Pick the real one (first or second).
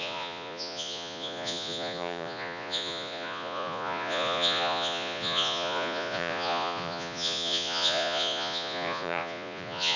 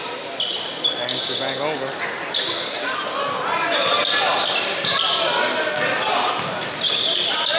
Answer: second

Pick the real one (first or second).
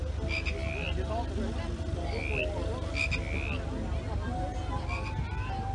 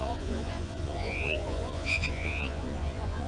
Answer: first